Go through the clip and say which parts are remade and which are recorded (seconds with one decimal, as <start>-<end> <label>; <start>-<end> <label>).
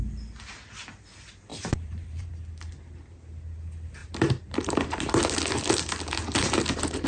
0.0-1.5 recorded; 1.5-2.3 remade; 2.3-4.0 recorded; 4.0-5.1 remade; 5.1-7.1 recorded